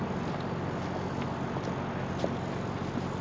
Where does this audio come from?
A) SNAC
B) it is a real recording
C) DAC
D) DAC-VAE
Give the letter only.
B